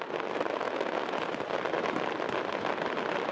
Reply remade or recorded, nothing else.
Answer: recorded